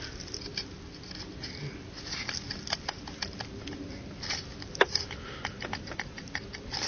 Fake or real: real